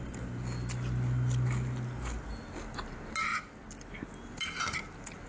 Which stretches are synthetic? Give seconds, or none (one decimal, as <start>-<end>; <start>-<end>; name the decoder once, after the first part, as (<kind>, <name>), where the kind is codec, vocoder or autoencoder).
none